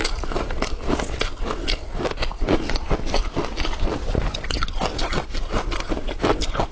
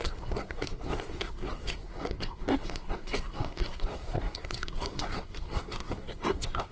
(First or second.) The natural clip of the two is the first